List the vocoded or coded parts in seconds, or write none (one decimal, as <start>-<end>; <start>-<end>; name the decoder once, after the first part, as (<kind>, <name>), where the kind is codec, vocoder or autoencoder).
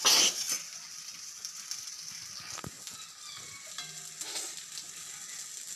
none